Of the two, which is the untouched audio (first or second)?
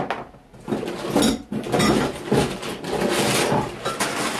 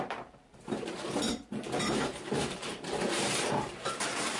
first